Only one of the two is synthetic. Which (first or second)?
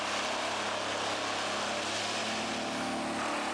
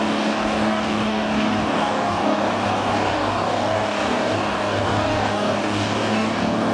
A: second